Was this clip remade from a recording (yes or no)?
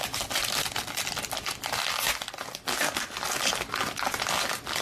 no